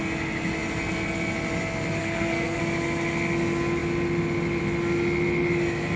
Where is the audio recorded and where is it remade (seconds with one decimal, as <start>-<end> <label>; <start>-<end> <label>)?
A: 0.0-2.0 recorded; 2.0-2.6 remade; 2.6-6.0 recorded